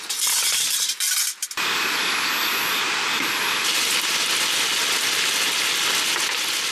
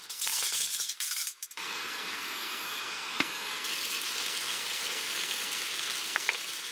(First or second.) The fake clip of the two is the second